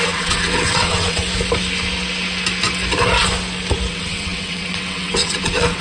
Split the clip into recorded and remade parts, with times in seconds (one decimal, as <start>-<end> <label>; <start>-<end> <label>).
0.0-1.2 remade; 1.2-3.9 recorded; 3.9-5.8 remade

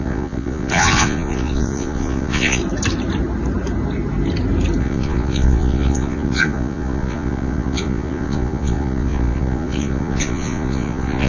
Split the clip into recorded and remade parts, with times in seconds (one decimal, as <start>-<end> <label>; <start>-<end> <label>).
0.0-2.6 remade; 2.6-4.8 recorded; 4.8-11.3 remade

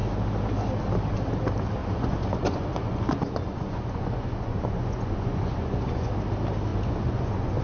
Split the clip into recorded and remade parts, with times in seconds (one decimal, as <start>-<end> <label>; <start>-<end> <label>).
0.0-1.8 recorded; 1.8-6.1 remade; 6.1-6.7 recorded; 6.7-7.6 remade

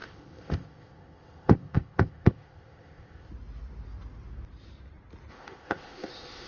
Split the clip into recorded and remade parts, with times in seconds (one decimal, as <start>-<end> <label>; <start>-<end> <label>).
0.0-3.3 remade; 3.3-5.3 recorded; 5.3-6.5 remade